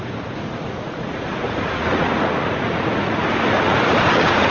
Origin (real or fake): fake